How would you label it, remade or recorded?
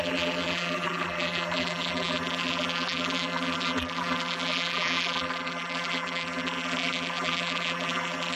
remade